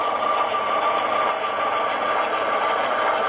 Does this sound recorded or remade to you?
remade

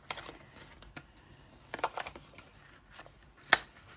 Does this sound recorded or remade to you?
recorded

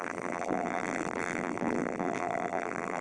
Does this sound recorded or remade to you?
remade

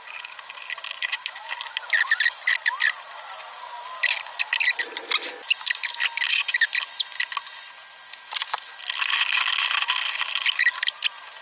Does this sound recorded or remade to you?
recorded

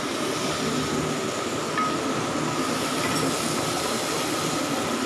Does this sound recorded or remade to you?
recorded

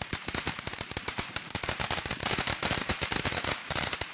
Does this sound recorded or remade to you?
remade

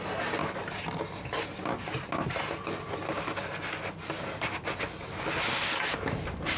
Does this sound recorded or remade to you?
recorded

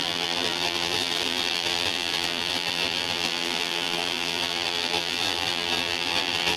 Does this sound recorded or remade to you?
remade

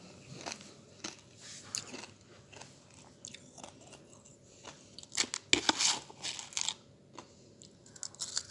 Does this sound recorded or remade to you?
recorded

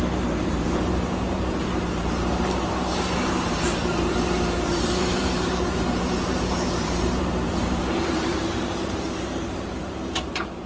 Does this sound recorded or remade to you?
remade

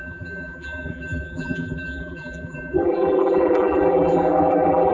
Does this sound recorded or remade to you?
remade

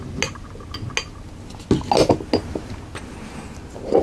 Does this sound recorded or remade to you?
recorded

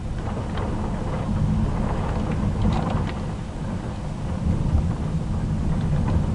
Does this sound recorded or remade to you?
recorded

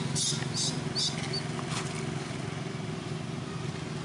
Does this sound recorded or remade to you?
recorded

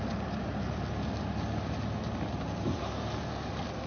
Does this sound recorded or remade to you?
recorded